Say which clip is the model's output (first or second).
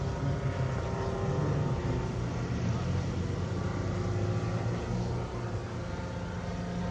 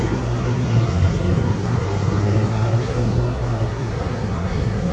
second